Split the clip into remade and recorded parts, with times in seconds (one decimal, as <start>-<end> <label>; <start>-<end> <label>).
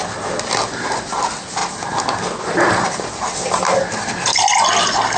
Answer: 0.0-5.2 recorded